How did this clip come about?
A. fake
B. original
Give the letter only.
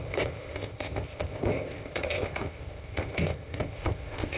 A